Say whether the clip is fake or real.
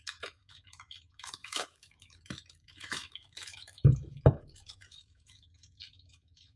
fake